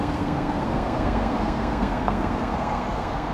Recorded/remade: remade